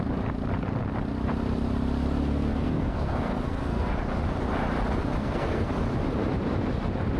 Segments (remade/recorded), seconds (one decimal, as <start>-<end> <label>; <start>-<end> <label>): 0.0-2.2 recorded; 2.2-3.9 remade; 3.9-5.2 recorded; 5.2-5.7 remade; 5.7-7.2 recorded